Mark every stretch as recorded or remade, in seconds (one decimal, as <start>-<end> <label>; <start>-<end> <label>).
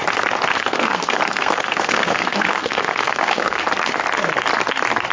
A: 0.0-0.5 recorded; 0.5-3.6 remade; 3.6-5.1 recorded